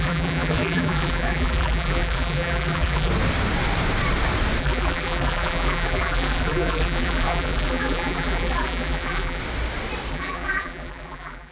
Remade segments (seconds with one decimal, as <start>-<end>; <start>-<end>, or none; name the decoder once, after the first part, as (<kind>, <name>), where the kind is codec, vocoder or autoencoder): 0.0-3.1 (vocoder, BigVGAN v2); 4.6-9.4; 10.1-11.5